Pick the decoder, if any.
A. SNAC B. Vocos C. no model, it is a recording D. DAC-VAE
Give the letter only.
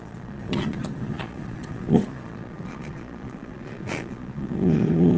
B